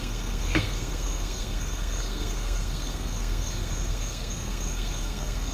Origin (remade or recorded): remade